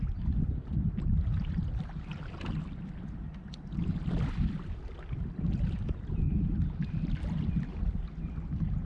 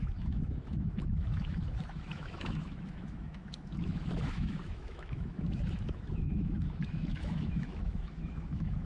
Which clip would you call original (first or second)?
first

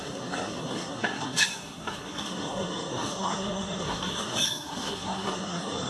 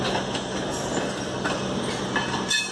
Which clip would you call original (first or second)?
second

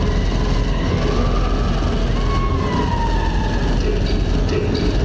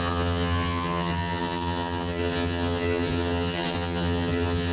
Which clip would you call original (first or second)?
first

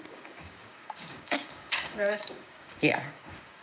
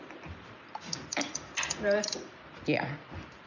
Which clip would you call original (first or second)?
second